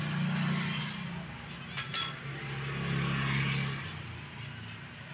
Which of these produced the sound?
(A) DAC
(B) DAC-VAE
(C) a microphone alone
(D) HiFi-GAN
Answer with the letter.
C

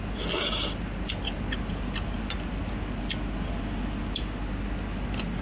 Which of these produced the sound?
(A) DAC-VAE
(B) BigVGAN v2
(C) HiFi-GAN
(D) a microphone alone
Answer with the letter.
D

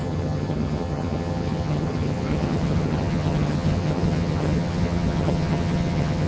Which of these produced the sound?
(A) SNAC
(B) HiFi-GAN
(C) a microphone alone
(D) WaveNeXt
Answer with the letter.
B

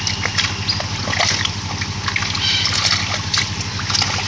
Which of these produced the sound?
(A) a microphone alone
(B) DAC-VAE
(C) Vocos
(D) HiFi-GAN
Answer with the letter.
A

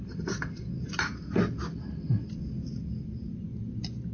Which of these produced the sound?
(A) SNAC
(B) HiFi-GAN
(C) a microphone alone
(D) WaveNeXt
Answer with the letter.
C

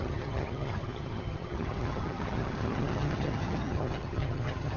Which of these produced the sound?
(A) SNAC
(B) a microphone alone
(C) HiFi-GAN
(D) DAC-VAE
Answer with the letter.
C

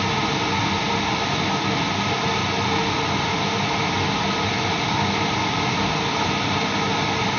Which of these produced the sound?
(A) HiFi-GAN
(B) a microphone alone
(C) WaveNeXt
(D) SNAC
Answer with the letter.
B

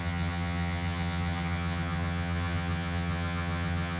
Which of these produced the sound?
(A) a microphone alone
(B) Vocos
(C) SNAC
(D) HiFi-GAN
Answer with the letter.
D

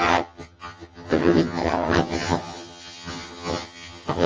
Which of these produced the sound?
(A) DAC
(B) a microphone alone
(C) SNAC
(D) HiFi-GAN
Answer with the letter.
D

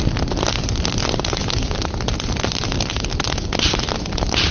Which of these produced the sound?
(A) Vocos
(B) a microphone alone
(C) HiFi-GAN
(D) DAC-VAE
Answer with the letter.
B